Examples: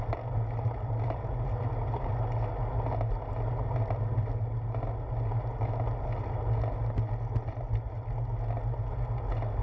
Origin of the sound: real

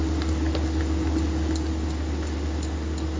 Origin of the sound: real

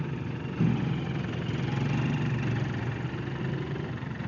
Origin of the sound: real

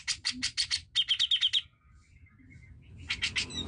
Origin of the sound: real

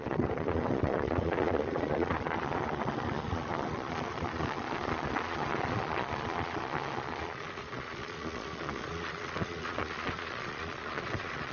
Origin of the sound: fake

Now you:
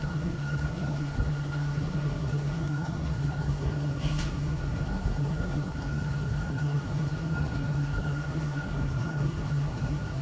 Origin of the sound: fake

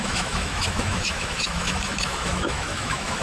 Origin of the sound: fake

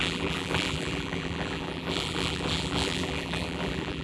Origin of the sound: fake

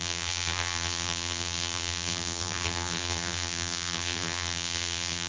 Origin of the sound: fake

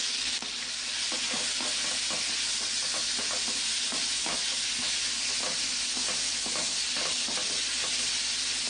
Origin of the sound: real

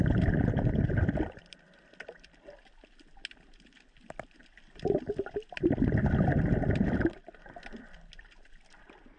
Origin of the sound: real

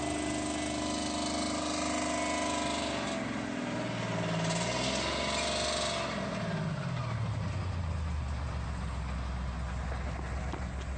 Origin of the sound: real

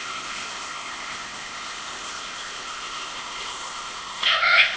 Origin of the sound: fake